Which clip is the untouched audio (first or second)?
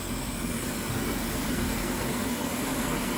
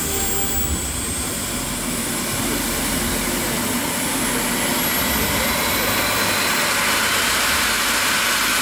second